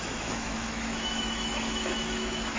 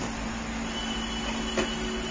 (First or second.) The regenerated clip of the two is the first